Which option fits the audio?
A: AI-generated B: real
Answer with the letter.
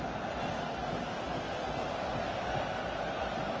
B